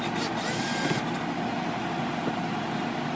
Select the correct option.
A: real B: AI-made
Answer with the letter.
A